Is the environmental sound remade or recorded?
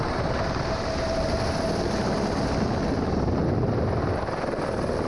recorded